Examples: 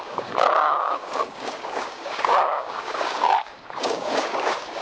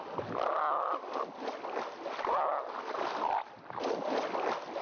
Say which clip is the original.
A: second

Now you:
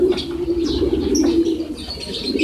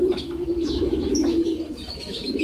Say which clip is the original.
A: first